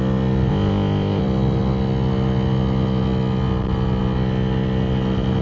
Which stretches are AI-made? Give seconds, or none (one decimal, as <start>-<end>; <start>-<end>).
0.5-1.2